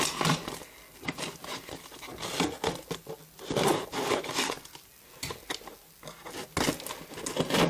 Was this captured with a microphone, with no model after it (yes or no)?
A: yes